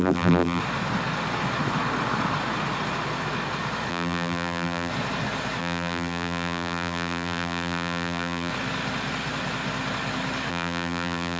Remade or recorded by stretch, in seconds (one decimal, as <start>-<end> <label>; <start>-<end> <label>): 0.0-0.6 remade; 0.6-3.9 recorded; 3.9-4.9 remade; 4.9-5.6 recorded; 5.6-8.5 remade; 8.5-10.5 recorded; 10.5-11.4 remade